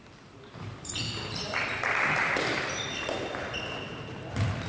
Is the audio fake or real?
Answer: real